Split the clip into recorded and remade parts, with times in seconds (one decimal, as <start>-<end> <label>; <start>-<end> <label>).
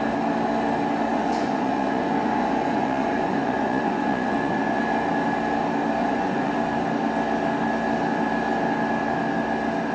0.0-1.1 recorded; 1.1-4.8 remade; 4.8-6.0 recorded; 6.0-6.5 remade; 6.5-9.9 recorded